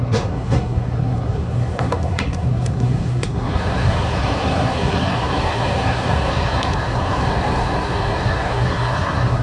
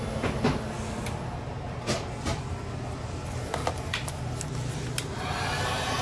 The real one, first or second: second